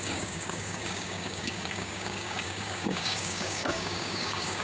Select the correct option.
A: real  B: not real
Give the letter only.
B